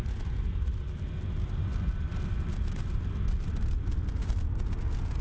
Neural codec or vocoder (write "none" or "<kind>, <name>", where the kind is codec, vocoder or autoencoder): none